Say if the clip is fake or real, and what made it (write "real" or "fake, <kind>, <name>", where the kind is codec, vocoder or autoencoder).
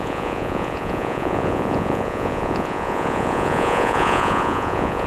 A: fake, vocoder, Vocos